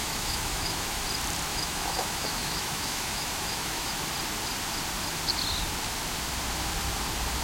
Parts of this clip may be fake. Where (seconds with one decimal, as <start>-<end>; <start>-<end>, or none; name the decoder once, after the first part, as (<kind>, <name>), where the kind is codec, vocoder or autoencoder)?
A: 0.0-1.0 (autoencoder, DAC-VAE); 1.5-3.9

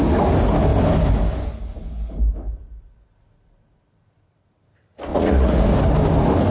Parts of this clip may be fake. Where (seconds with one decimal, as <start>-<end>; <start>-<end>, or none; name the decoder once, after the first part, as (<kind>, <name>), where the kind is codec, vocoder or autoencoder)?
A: 5.1-5.6 (vocoder, Vocos)

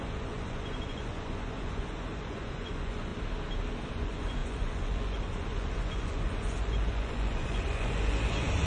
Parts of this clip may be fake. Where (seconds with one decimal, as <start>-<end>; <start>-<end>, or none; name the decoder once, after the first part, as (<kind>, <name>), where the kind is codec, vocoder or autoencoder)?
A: 0.0-3.1 (vocoder, Vocos); 3.9-8.7

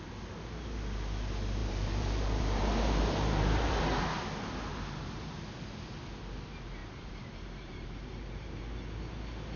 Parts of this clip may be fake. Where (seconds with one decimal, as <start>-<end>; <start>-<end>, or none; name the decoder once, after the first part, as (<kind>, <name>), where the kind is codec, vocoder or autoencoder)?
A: 1.6-4.0 (vocoder, BigVGAN v2); 4.7-5.4; 6.8-8.6

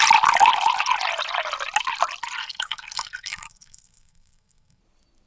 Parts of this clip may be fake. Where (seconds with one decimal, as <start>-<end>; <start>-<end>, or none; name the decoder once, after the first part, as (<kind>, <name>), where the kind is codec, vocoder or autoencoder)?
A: 2.4-4.8 (codec, SNAC)

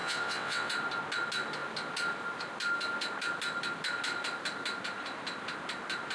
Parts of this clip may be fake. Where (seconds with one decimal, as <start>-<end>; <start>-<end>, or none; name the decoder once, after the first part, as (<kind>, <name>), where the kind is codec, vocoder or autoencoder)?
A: 0.0-0.7 (vocoder, WaveNeXt)